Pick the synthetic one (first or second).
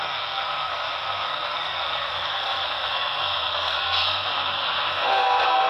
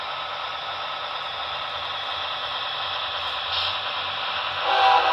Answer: first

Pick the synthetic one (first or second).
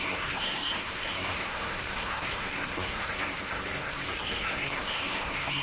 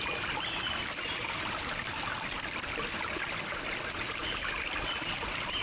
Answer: first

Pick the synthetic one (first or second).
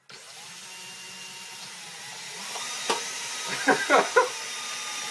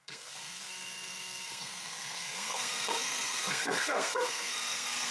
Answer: second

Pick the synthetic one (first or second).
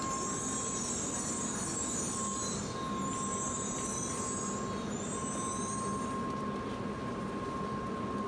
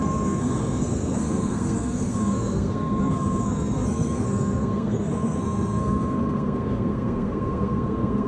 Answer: second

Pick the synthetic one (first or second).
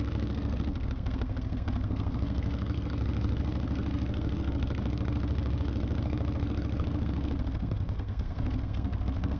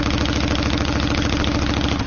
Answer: first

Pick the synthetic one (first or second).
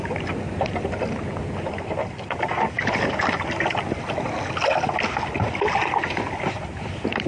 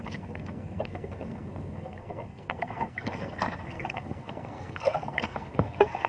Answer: second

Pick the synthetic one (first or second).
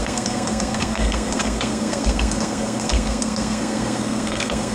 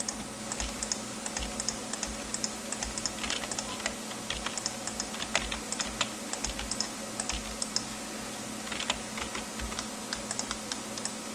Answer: first